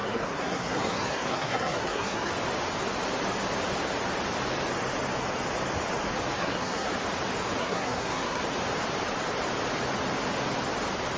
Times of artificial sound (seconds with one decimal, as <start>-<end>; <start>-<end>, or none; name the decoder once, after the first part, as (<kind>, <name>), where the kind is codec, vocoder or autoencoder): 0.0-2.3 (codec, SNAC); 6.4-6.9; 7.6-8.4